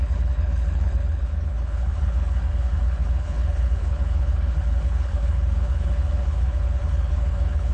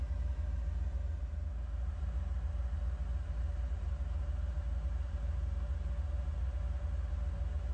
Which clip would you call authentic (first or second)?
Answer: second